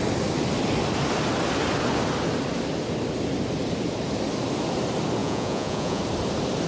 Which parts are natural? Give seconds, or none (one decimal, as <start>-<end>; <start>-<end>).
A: 0.0-5.2; 6.0-6.7